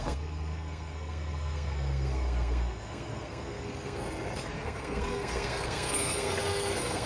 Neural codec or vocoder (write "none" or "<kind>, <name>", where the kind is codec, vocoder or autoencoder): codec, SNAC